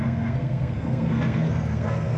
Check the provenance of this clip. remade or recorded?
remade